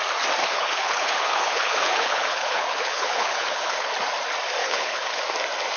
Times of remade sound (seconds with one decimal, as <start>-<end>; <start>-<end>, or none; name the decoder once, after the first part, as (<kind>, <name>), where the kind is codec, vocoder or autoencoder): 0.4-3.9 (codec, HILCodec); 4.6-5.2